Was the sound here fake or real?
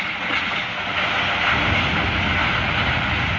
real